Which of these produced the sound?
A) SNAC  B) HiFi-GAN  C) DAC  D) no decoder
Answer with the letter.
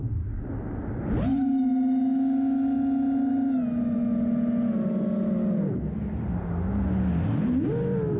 D